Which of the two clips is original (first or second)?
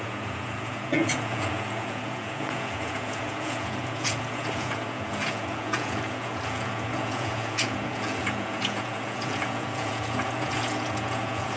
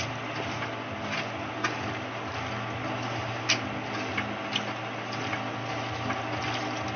second